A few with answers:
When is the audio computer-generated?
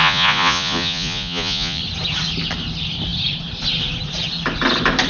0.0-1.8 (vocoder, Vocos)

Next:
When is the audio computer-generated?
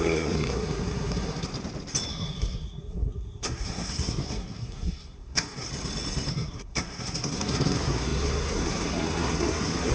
0.0-1.5 (codec, SNAC); 2.1-5.7; 6.3-9.9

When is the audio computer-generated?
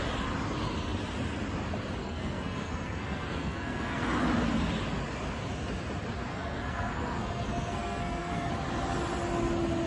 2.0-4.2 (codec, SNAC); 6.3-8.5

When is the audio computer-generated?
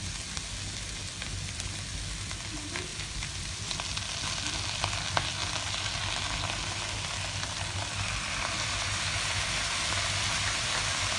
2.9-3.8 (vocoder, BigVGAN v2)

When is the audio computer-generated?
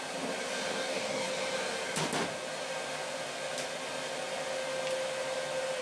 0.7-1.3 (codec, DAC)